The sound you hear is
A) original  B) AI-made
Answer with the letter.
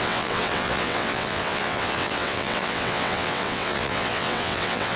B